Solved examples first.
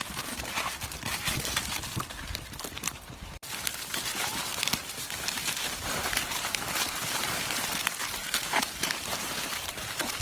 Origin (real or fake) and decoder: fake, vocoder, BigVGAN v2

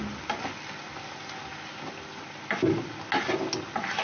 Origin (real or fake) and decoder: real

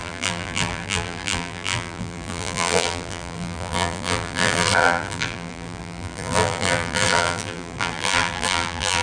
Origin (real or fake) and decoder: fake, vocoder, BigVGAN v2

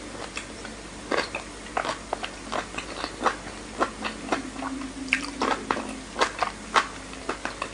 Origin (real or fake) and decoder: fake, vocoder, BigVGAN v2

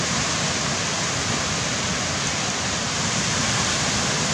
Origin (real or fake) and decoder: fake, vocoder, BigVGAN v2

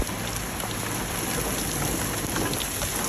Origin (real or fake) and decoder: real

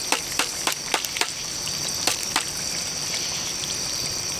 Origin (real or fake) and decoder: fake, vocoder, BigVGAN v2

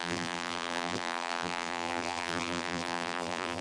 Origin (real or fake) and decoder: fake, vocoder, BigVGAN v2